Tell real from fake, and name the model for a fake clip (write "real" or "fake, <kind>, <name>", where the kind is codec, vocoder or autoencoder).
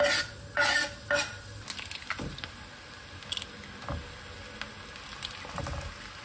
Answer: real